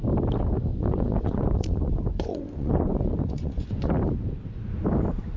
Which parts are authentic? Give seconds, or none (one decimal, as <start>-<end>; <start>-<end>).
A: 0.0-0.7; 3.9-5.4